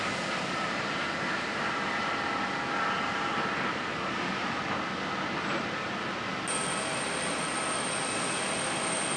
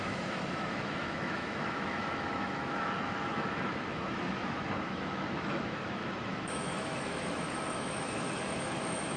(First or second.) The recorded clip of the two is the first